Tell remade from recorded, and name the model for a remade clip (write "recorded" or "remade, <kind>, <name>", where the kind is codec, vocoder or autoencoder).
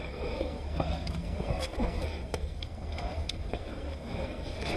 remade, codec, SNAC